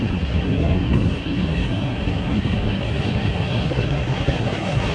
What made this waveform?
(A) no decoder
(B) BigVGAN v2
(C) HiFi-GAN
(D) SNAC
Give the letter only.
D